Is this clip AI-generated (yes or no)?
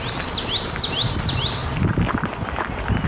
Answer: no